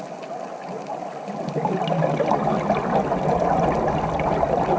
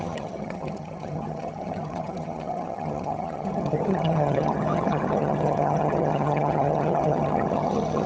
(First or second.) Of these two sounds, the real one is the first